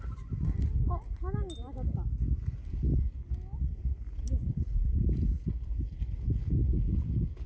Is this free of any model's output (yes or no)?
yes